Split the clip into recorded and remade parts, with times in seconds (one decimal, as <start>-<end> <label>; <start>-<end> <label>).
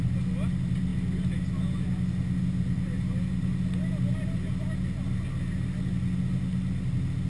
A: 0.0-7.3 recorded